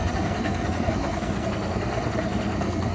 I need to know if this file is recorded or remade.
remade